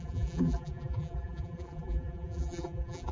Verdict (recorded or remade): remade